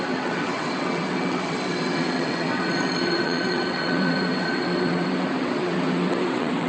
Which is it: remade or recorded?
remade